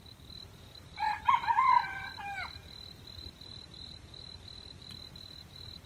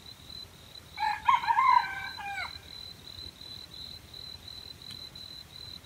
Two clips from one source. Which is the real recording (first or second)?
first